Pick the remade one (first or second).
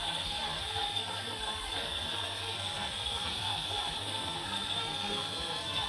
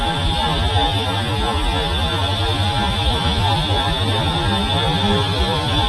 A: first